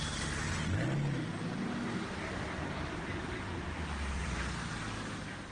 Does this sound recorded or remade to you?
recorded